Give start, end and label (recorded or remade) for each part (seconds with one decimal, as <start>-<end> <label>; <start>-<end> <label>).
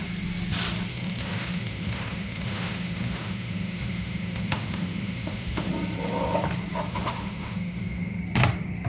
0.0-0.9 recorded; 0.9-5.7 remade; 5.7-6.9 recorded; 6.9-8.2 remade; 8.2-8.9 recorded